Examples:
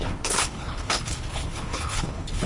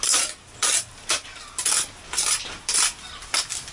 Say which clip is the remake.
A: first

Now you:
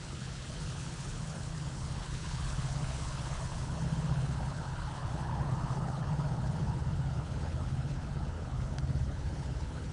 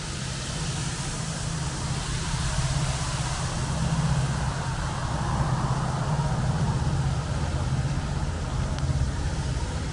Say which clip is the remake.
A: first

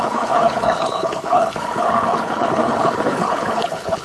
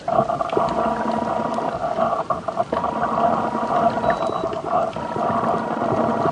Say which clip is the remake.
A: first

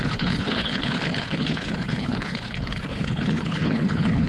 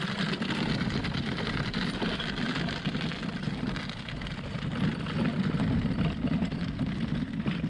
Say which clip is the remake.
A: first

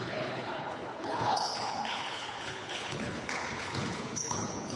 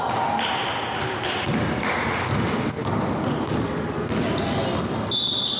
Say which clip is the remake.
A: first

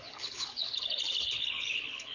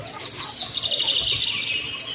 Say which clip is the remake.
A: first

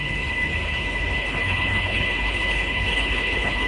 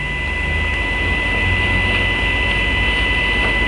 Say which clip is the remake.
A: first